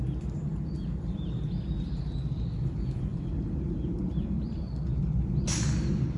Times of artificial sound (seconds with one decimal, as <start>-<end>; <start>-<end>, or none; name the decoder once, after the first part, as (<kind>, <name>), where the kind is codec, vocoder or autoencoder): none